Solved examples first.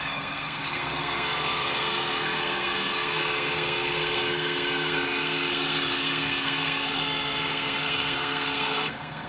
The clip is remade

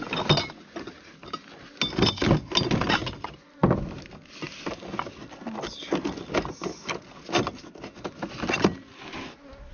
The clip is recorded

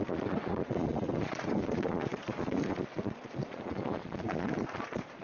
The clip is remade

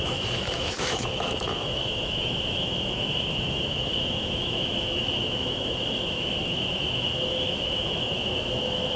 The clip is remade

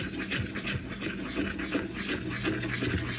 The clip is recorded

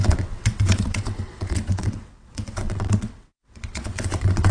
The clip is remade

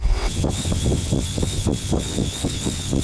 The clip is remade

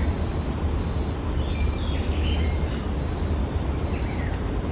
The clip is recorded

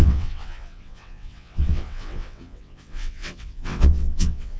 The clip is remade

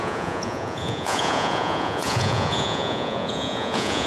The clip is remade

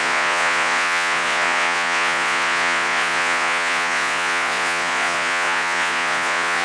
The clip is remade